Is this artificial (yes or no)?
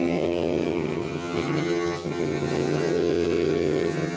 yes